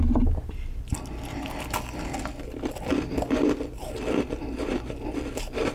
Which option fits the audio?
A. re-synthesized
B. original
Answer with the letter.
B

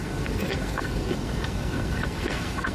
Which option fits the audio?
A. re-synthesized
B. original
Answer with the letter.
A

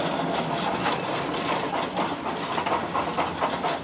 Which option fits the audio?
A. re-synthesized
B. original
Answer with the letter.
B